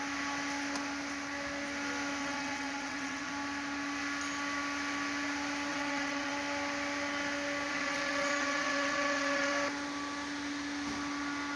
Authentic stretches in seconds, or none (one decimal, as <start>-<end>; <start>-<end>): 0.0-2.2; 3.3-5.7; 6.3-7.7; 9.5-11.6